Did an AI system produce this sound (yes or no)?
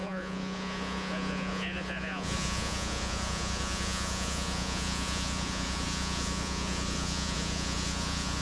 yes